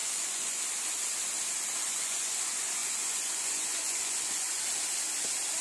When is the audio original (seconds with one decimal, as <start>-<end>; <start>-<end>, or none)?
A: 0.6-1.8; 2.4-2.8; 4.6-5.6